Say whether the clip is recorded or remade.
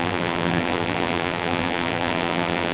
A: remade